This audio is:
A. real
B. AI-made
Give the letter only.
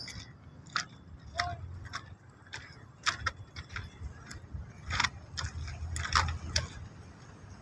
A